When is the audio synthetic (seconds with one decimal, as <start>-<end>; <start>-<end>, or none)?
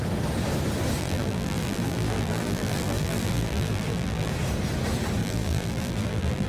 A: 1.0-4.3; 5.2-6.5